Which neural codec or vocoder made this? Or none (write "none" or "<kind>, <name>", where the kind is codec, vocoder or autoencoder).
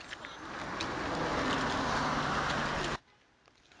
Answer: none